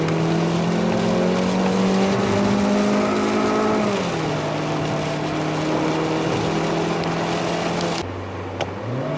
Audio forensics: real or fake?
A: real